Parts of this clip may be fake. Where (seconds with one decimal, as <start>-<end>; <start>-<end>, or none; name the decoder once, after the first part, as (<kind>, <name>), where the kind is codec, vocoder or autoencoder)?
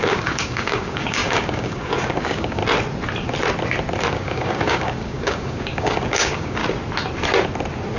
0.0-2.6 (codec, DAC); 4.1-6.6